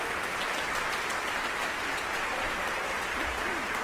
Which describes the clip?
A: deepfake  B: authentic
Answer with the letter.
A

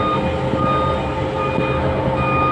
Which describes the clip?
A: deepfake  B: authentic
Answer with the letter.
B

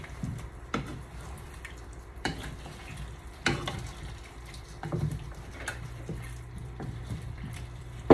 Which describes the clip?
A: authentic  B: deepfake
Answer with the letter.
B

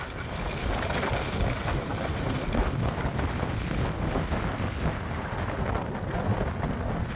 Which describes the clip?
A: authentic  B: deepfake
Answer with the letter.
A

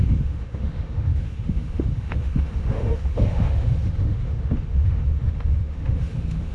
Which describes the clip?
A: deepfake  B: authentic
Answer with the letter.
A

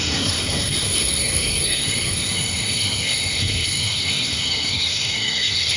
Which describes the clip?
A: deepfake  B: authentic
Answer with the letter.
A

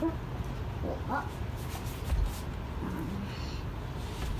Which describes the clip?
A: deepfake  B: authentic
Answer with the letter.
B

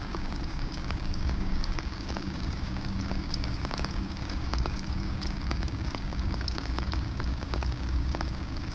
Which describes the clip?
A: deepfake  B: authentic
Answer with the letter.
A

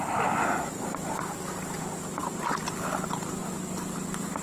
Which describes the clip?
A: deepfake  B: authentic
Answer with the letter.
B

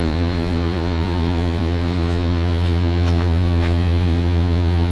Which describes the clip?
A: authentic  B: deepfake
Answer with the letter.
B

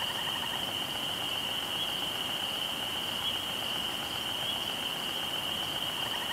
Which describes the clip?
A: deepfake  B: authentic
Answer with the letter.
B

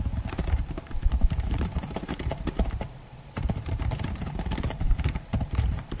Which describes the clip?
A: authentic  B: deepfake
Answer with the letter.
B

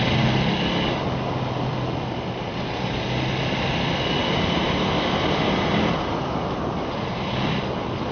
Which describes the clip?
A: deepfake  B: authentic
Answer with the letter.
B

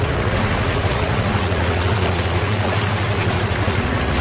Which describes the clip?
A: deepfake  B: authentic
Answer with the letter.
A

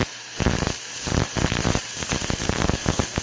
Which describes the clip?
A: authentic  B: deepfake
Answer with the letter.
B